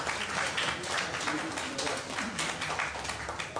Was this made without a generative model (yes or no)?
yes